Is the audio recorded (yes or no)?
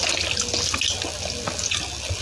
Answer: yes